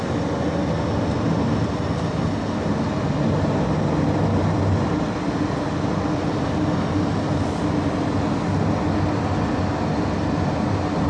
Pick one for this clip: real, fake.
real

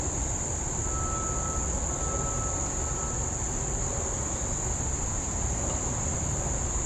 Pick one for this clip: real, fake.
real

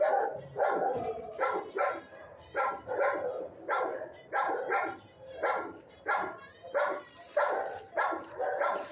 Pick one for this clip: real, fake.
fake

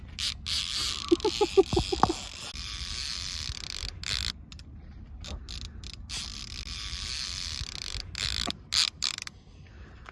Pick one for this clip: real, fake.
real